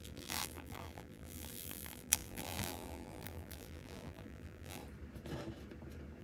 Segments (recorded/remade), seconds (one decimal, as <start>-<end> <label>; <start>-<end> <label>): 0.0-4.8 remade; 4.8-6.2 recorded